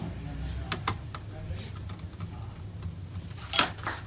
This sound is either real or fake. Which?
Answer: real